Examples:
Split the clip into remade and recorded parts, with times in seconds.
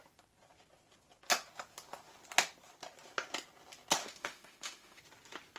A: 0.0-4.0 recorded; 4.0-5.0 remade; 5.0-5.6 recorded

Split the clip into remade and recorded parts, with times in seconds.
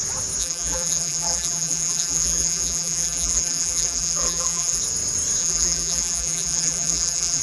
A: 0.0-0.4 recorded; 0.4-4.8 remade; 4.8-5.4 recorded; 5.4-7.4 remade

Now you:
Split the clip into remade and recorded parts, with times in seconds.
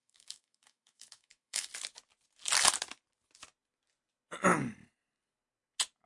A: 0.0-1.7 remade; 1.7-6.1 recorded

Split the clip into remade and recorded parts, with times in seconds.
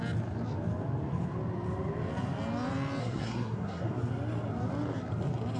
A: 0.0-3.0 recorded; 3.0-4.0 remade; 4.0-5.6 recorded